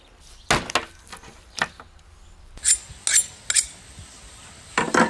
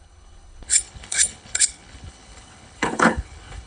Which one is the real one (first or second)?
first